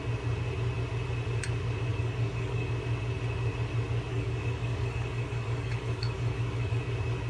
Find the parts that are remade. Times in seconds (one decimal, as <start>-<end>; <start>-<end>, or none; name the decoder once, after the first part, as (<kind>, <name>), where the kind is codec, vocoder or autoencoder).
1.9-2.7 (codec, DAC); 4.1-6.8